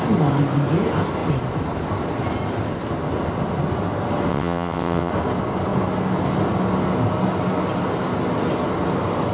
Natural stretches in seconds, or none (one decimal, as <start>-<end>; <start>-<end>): 0.0-4.3; 5.1-9.3